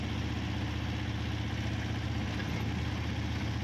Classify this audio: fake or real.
real